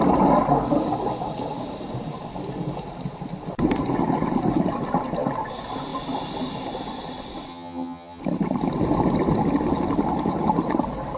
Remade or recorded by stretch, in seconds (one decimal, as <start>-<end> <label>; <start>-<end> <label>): 0.0-7.5 recorded; 7.5-8.2 remade; 8.2-11.2 recorded